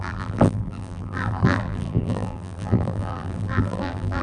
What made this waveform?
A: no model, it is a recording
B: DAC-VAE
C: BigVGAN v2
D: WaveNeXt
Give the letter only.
C